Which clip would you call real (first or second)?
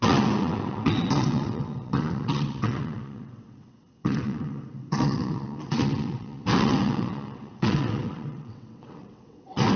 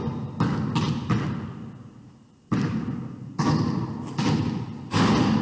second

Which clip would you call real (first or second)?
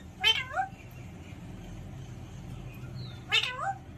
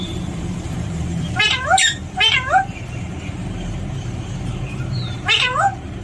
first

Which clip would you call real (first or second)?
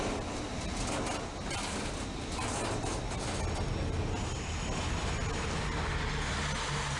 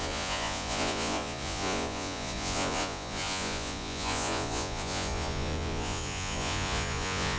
first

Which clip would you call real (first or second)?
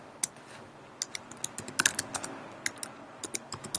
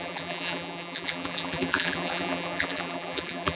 first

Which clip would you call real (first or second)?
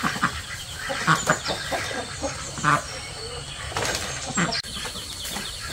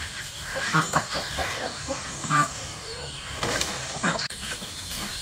first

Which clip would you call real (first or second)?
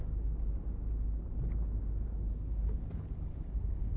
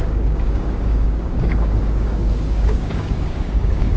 first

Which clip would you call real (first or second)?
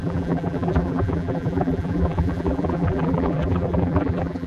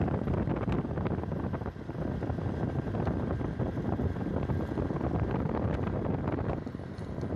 second